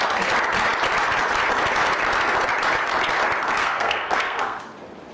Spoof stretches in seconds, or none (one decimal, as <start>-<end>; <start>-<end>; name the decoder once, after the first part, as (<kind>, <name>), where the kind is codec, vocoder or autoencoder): 3.6-4.6 (codec, SNAC)